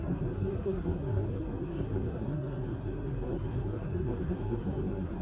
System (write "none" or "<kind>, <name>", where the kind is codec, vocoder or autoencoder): codec, SNAC